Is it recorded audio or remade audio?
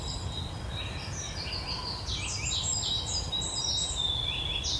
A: recorded